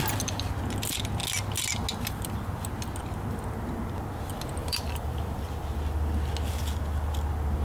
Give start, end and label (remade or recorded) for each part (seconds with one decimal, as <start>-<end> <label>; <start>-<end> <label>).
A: 0.0-4.6 recorded; 4.6-5.8 remade; 5.8-7.6 recorded

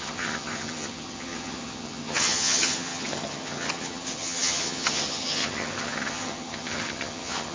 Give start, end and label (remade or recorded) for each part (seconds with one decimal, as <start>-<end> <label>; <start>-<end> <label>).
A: 0.0-7.5 remade

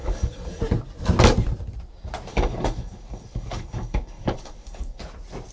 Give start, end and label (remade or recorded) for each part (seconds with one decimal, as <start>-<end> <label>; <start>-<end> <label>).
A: 0.0-0.6 remade; 0.6-2.3 recorded; 2.3-5.0 remade; 5.0-5.5 recorded

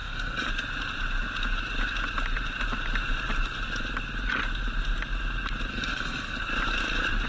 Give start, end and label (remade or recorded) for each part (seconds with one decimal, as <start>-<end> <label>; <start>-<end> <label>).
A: 0.0-0.5 remade; 0.5-5.7 recorded; 5.7-6.4 remade; 6.4-7.3 recorded

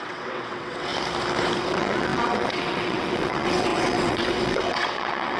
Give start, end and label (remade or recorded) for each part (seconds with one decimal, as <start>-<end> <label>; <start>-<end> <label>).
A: 0.0-0.9 remade; 0.9-1.6 recorded; 1.6-5.4 remade